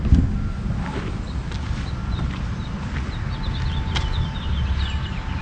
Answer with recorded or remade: recorded